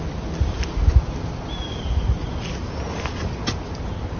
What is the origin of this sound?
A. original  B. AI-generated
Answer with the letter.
A